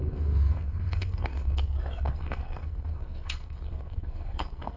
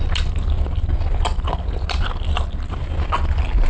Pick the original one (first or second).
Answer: second